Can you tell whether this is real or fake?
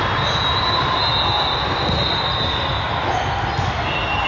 real